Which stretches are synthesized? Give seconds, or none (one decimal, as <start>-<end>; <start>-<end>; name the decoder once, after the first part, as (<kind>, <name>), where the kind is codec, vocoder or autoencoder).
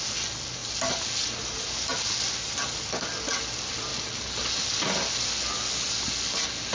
none